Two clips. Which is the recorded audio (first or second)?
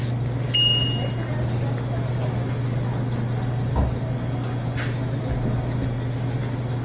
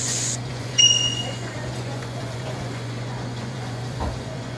first